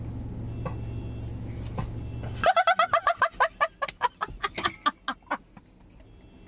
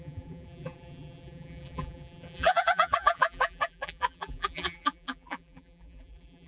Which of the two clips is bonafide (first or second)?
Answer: first